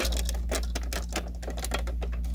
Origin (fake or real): real